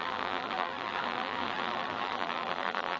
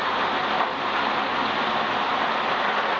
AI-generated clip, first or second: first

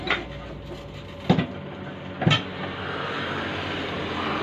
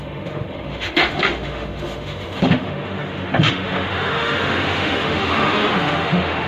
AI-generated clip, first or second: second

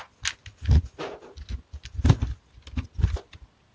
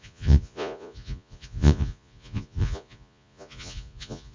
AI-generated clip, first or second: second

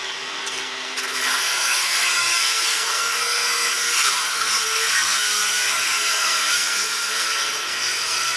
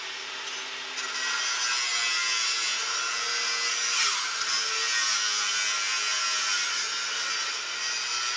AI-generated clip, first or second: first